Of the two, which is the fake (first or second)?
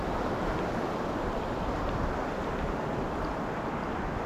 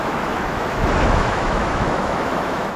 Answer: second